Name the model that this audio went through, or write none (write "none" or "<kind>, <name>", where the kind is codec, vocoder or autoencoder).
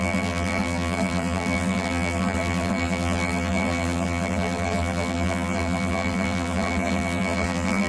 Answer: vocoder, BigVGAN v2